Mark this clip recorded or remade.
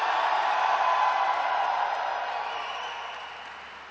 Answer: recorded